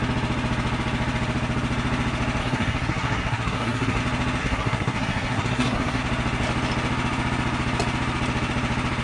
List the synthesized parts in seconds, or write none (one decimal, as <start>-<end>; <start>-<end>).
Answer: 2.4-4.0; 4.4-6.0